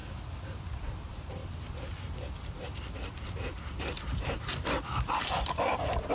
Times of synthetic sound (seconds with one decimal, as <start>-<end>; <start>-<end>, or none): 0.7-1.4; 5.1-6.1